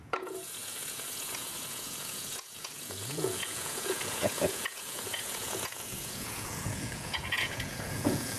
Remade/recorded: remade